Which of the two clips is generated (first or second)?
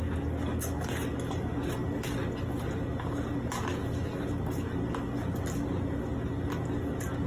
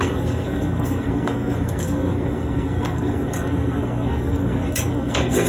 second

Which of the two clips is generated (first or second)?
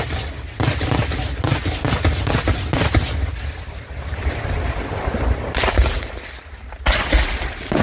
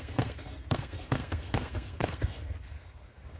second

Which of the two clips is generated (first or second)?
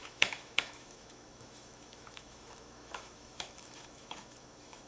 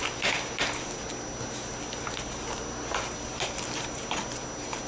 first